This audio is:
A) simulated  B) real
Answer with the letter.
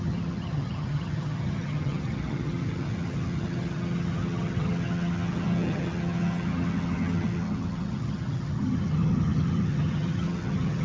A